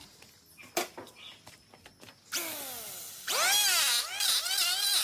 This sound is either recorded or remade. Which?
recorded